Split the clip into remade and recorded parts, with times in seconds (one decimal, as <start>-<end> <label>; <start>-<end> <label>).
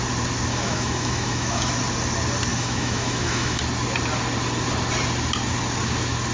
0.0-0.5 recorded; 0.5-1.7 remade; 1.7-2.5 recorded; 2.5-3.6 remade; 3.6-6.3 recorded